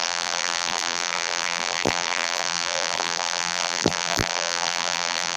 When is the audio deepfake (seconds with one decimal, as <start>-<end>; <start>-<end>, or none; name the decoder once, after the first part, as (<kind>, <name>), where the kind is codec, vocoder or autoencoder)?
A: 0.0-5.4 (vocoder, BigVGAN v2)